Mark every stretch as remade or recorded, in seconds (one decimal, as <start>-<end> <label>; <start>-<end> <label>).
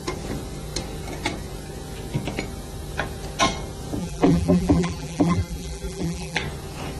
0.0-4.0 recorded; 4.0-6.4 remade; 6.4-7.0 recorded